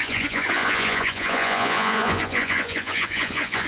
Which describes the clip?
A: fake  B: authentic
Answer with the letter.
A